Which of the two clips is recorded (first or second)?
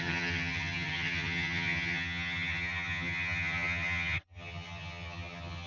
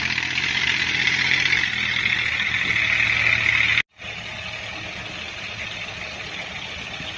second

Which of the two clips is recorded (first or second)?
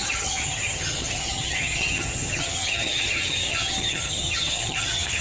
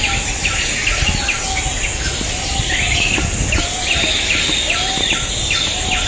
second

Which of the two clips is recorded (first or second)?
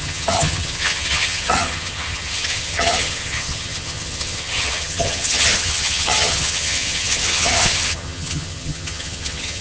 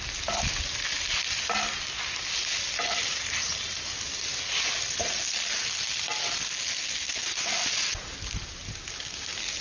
second